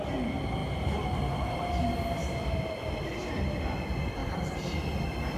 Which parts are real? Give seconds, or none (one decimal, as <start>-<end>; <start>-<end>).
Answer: 0.0-4.2; 4.7-5.4